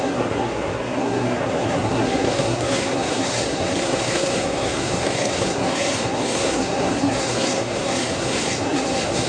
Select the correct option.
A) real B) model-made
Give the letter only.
B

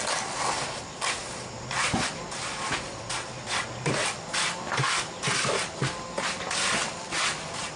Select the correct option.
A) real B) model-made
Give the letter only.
A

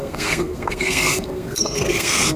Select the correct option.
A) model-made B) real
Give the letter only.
A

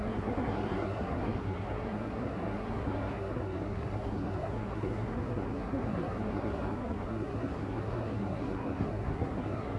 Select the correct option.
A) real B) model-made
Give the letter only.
B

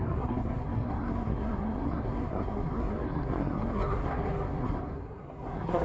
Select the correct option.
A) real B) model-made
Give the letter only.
B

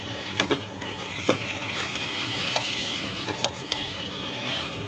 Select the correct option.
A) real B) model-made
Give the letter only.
B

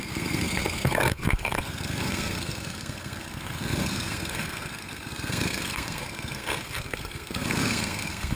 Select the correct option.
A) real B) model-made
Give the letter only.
B